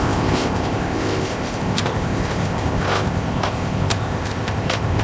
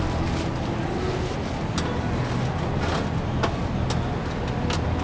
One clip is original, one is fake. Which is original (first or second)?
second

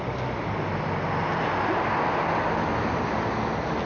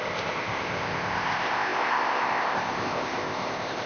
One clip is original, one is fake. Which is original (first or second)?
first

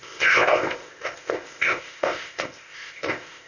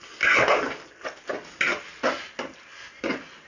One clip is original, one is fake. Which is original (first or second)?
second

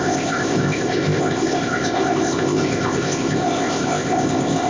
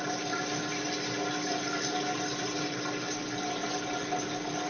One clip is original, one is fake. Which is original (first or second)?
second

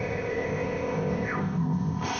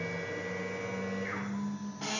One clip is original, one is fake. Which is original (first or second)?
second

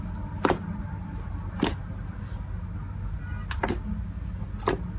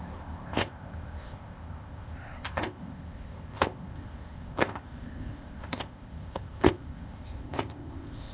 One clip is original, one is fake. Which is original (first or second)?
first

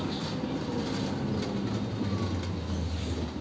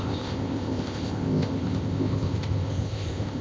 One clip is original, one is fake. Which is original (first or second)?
first